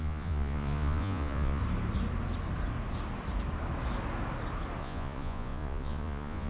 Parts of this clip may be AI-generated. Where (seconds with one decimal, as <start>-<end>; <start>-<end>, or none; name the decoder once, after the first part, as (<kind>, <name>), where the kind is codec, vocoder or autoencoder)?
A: 0.0-1.6 (vocoder, Vocos); 4.8-6.5